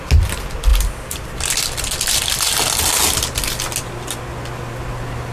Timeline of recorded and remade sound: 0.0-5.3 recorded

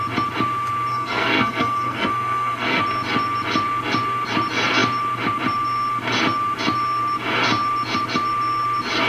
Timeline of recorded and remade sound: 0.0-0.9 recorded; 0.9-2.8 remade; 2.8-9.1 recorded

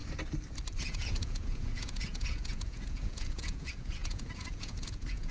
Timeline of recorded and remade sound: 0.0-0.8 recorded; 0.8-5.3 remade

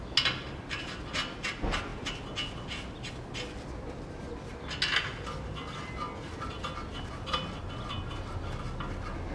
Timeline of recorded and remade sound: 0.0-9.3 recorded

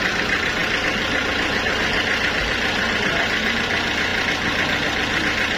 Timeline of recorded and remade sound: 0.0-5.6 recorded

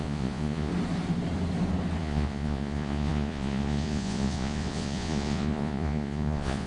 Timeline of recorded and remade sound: 0.0-0.7 remade; 0.7-2.0 recorded; 2.0-6.7 remade

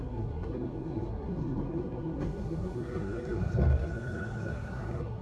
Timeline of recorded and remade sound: 0.0-5.2 remade

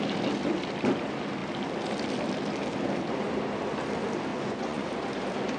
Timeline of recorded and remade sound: 0.0-4.3 recorded; 4.3-4.9 remade; 4.9-5.6 recorded